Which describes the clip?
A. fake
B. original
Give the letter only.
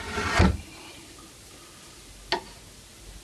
B